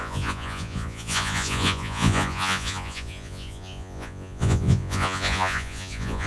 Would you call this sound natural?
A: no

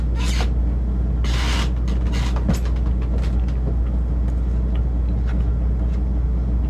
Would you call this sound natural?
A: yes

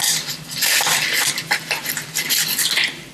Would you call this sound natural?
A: yes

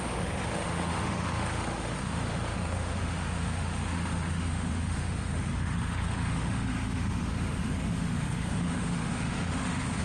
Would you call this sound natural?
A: no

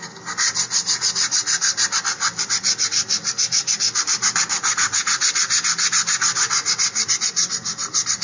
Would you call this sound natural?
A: yes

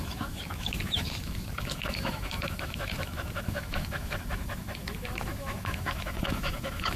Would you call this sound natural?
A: no